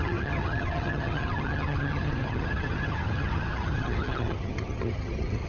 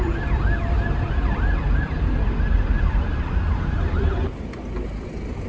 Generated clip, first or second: first